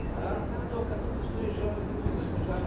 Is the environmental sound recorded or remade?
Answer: remade